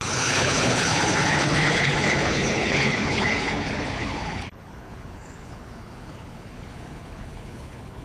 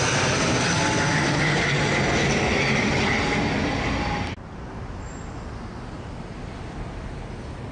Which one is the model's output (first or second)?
first